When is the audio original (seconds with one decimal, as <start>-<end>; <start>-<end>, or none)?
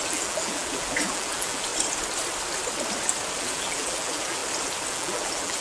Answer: 1.7-3.4; 4.4-4.9